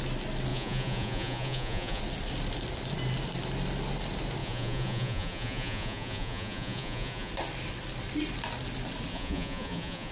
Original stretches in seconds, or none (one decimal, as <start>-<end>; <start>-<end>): 0.0-0.5; 2.0-4.4; 7.3-9.1